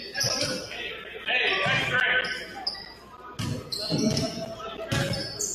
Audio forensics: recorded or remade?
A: recorded